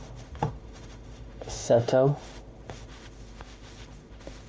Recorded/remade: remade